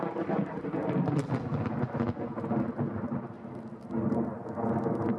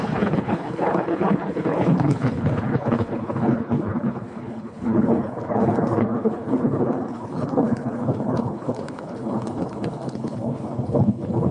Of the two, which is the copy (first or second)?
second